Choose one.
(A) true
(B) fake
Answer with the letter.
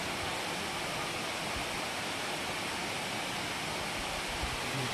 A